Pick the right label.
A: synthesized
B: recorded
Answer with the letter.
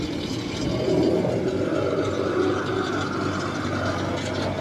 B